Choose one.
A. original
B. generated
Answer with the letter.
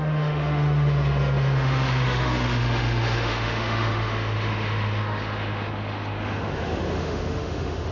B